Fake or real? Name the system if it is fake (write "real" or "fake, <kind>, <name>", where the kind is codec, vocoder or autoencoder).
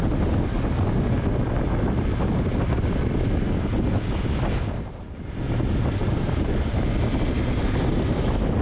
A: real